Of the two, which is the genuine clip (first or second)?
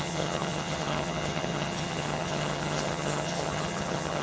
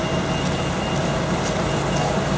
second